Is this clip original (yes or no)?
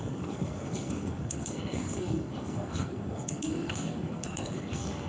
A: no